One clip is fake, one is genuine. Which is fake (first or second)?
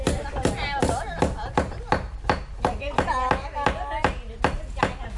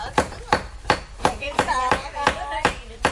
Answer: second